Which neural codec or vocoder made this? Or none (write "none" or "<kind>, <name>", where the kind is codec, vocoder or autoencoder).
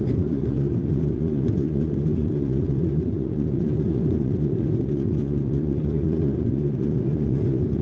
vocoder, Vocos